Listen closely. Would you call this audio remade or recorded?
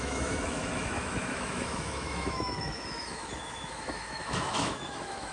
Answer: remade